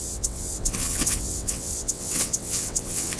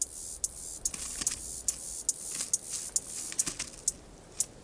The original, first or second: second